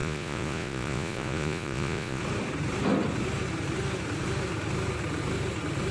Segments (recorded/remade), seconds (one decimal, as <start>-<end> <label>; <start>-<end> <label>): 0.0-2.2 remade; 2.2-5.9 recorded